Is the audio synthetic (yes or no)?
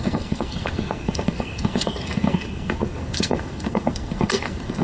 yes